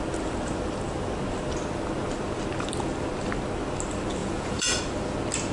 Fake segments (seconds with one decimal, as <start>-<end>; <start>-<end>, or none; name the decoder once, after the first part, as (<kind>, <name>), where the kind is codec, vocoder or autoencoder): 4.2-4.8 (vocoder, Vocos)